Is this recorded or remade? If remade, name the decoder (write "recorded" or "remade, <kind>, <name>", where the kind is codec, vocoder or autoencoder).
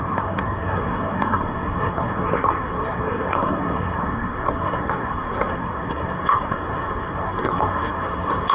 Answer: remade, codec, SNAC